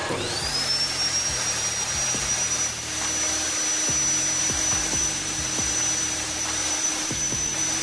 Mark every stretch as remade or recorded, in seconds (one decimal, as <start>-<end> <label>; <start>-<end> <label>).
0.0-4.4 recorded; 4.4-7.8 remade

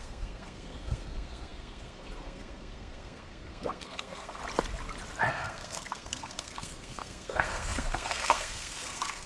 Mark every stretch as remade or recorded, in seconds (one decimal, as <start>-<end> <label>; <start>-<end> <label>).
0.0-4.4 remade; 4.4-5.3 recorded; 5.3-9.3 remade

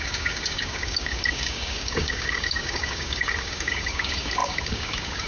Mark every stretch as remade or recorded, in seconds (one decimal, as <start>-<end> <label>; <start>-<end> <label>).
0.0-5.3 remade

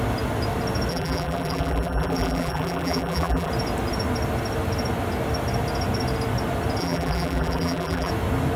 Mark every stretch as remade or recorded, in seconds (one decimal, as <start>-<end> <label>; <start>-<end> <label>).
0.0-0.9 recorded; 0.9-3.5 remade; 3.5-6.8 recorded; 6.8-8.1 remade; 8.1-8.6 recorded

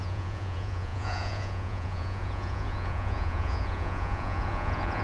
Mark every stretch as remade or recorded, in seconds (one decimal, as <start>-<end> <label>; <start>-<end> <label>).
0.0-5.0 remade

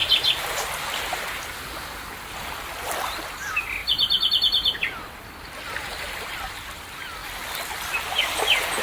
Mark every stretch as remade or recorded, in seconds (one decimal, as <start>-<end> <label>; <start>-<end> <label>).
0.0-0.5 remade; 0.5-3.8 recorded; 3.8-6.5 remade; 6.5-8.8 recorded

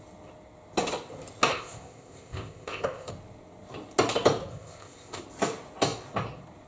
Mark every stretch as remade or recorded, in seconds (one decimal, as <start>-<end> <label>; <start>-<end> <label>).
0.0-1.5 recorded; 1.5-3.1 remade; 3.1-4.5 recorded; 4.5-5.2 remade; 5.2-6.7 recorded

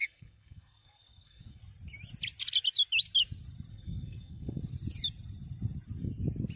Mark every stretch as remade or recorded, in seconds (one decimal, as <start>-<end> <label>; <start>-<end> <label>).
0.0-1.6 remade; 1.6-3.7 recorded; 3.7-4.6 remade; 4.6-6.6 recorded